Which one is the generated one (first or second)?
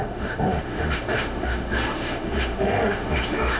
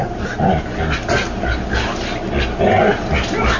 first